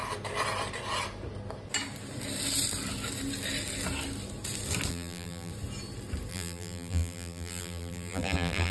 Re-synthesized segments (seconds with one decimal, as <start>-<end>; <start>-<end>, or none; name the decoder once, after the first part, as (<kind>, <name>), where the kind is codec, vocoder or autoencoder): 4.9-5.5 (vocoder, BigVGAN v2); 6.3-8.7